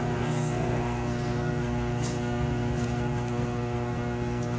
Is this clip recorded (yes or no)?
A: no